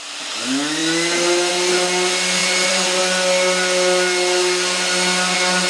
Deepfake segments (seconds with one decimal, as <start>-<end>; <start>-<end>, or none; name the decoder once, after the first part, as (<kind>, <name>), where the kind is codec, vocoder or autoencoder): 2.4-3.0 (vocoder, BigVGAN v2)